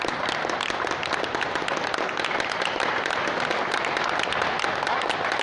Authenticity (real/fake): real